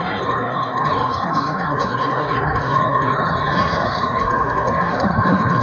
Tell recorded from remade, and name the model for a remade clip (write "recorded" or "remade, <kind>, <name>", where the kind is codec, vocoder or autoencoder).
remade, codec, SNAC